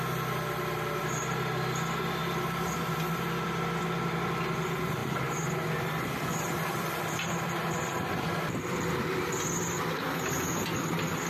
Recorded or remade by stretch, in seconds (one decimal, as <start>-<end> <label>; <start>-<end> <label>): 0.0-11.3 recorded